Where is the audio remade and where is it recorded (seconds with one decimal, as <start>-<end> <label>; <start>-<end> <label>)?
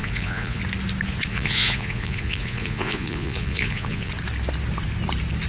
0.0-0.6 remade; 0.6-1.3 recorded; 1.3-4.1 remade; 4.1-5.5 recorded